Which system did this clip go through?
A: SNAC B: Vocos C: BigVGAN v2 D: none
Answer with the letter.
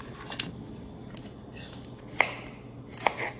D